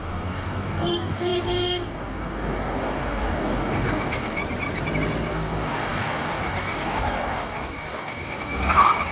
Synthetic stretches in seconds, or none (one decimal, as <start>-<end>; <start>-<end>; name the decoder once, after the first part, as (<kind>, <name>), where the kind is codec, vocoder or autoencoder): 0.0-4.4 (codec, DAC); 5.3-9.1